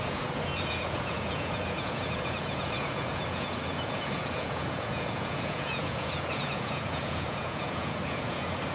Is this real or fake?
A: fake